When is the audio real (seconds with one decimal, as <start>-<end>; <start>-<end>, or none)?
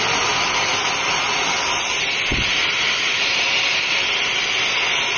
0.0-5.2